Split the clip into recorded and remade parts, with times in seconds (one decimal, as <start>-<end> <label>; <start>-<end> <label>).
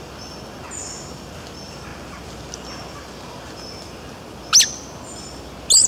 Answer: 0.0-5.9 recorded